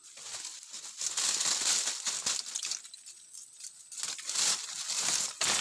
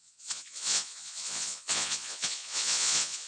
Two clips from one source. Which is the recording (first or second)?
first